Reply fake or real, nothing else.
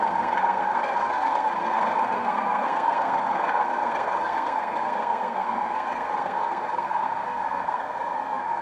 fake